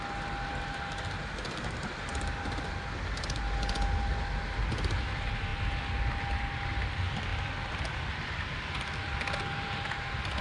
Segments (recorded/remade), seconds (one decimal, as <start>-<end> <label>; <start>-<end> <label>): 0.0-7.3 recorded; 7.3-9.4 remade; 9.4-10.4 recorded